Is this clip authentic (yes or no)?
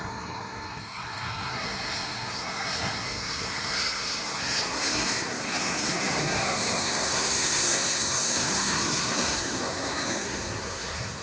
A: no